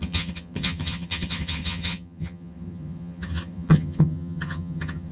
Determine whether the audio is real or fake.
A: fake